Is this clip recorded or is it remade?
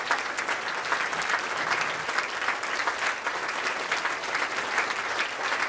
recorded